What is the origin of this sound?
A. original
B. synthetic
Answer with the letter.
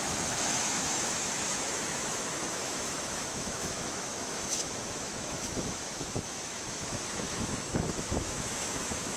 B